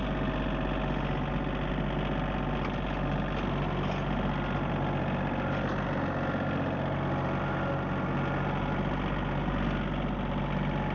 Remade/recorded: recorded